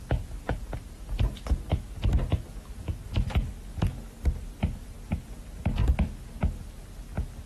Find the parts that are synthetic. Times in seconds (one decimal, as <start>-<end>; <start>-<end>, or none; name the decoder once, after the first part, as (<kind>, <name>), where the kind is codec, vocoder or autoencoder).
none